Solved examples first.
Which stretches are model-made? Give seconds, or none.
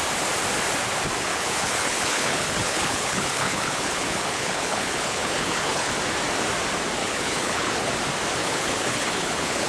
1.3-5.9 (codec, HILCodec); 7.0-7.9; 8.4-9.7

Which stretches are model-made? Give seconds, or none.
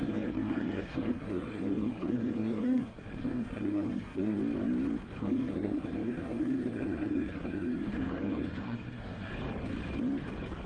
0.0-4.4 (codec, SNAC); 5.2-9.3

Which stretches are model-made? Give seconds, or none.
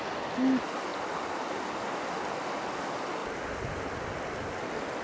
0.9-2.1 (vocoder, BigVGAN v2); 3.2-4.6